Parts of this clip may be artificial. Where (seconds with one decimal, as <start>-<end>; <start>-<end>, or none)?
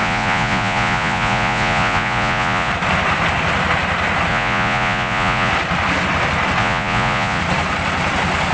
0.0-2.7; 4.3-5.5; 6.6-7.4